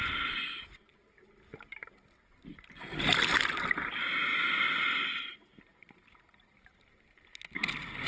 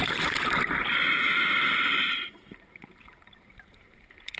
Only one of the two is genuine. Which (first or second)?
first